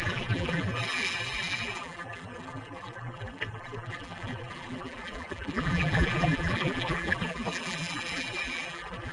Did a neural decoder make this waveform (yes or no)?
yes